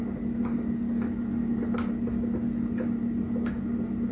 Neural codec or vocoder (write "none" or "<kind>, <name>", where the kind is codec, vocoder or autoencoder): none